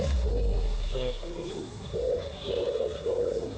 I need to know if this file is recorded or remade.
remade